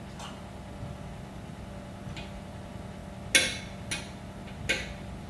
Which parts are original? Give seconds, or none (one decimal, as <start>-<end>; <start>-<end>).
0.0-5.3